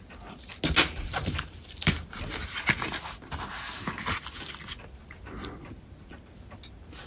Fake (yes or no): no